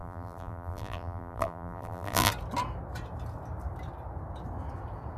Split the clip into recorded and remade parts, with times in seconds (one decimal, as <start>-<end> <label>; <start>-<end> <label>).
0.0-2.3 remade; 2.3-5.2 recorded